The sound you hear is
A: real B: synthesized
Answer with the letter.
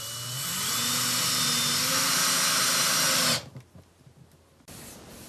A